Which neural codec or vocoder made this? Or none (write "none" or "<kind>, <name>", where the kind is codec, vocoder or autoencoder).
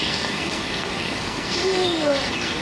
codec, SNAC